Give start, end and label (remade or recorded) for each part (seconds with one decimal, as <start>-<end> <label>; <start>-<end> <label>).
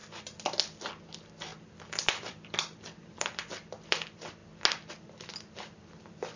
0.0-1.1 recorded; 1.1-4.4 remade; 4.4-4.9 recorded; 4.9-6.4 remade